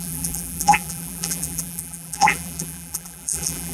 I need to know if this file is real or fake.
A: fake